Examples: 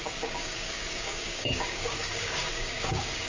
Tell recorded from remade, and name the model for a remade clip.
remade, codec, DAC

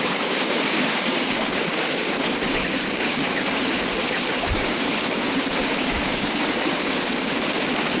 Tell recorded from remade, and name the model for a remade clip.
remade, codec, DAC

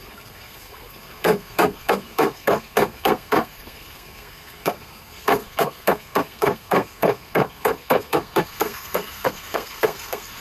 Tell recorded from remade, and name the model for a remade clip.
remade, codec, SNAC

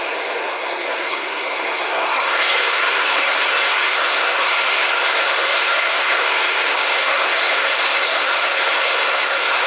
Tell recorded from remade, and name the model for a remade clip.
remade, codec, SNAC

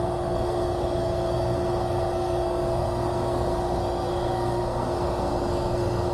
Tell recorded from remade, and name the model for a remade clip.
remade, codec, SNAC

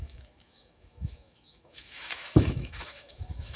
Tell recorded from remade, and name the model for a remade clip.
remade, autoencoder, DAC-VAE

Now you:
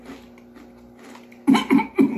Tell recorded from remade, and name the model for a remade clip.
recorded